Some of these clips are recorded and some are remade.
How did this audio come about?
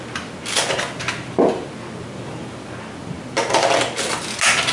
recorded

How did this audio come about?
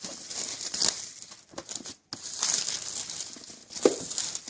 recorded